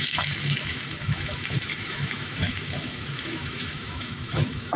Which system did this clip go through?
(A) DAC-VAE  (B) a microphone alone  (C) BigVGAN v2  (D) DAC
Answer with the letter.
A